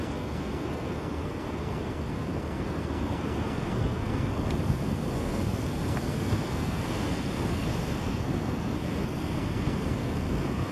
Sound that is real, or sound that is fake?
fake